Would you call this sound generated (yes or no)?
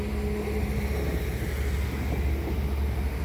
no